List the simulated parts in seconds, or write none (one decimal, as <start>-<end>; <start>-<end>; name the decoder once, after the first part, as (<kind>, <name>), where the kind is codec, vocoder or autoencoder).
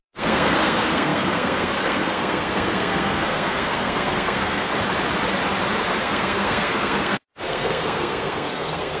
0.0-4.7 (codec, SNAC); 6.0-9.0